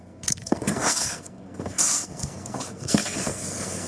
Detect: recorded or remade remade